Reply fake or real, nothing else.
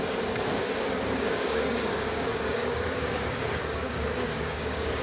fake